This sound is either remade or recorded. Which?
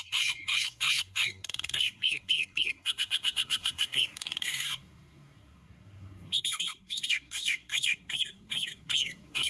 remade